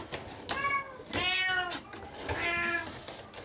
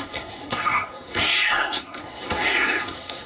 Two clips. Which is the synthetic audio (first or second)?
second